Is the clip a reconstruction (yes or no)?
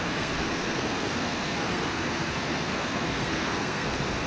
yes